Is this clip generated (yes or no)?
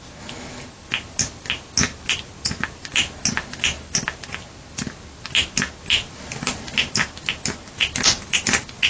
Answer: no